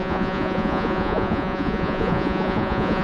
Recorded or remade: remade